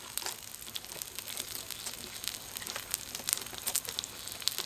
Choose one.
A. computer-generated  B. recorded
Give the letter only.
B